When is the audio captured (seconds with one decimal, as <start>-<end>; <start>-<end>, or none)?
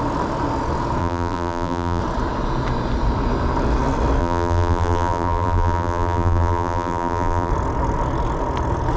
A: 0.0-1.0; 2.0-4.2; 7.5-9.0